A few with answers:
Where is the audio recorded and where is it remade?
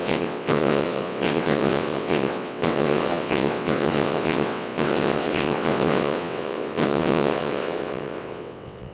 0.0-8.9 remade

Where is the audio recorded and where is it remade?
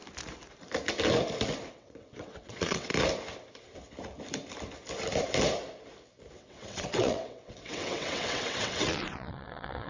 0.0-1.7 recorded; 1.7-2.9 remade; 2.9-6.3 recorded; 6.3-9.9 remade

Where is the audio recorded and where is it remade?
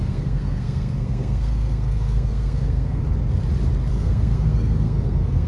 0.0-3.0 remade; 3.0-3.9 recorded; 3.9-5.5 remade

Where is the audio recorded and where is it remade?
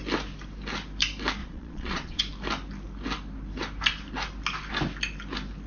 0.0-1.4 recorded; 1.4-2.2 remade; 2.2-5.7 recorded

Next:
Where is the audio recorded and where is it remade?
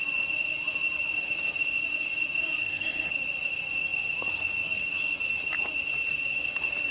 0.0-2.6 recorded; 2.6-3.1 remade; 3.1-6.9 recorded